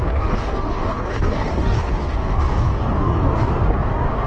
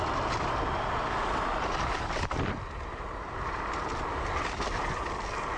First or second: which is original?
second